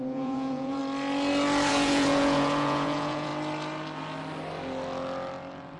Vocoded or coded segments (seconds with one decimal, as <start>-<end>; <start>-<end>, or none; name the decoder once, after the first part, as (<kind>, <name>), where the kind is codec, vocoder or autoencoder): 0.0-0.8 (vocoder, Vocos); 1.7-3.3